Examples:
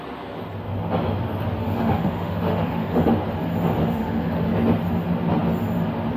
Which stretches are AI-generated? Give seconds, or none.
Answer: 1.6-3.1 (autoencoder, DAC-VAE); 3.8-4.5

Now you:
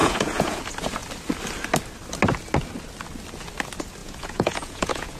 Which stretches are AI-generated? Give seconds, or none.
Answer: 0.0-0.6 (vocoder, Vocos); 4.0-5.2

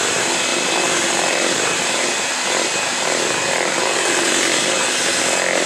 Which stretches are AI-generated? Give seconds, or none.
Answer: 0.5-2.2 (vocoder, BigVGAN v2)